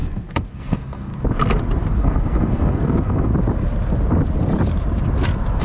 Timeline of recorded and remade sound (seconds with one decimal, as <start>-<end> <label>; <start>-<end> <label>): 0.0-1.1 remade; 1.1-2.0 recorded; 2.0-3.3 remade; 3.3-5.6 recorded